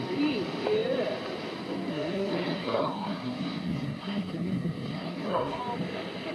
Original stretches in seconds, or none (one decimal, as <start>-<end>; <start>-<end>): 0.0-1.9; 5.6-6.3